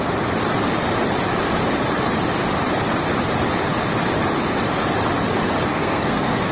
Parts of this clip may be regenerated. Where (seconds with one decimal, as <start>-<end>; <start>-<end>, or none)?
5.7-6.5